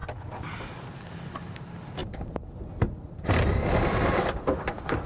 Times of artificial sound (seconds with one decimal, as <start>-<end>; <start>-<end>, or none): 1.3-5.1